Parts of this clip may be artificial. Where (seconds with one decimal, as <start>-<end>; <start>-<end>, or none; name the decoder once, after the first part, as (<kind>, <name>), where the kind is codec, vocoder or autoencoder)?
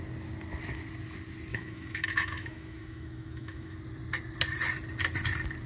1.5-3.8 (autoencoder, DAC-VAE)